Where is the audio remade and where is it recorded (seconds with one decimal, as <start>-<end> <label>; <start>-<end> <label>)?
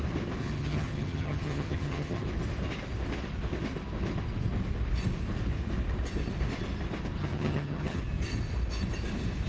0.0-0.4 recorded; 0.4-2.2 remade; 2.2-7.2 recorded; 7.2-8.0 remade; 8.0-9.5 recorded